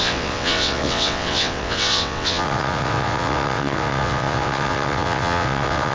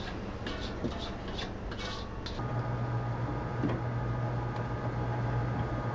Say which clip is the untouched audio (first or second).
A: second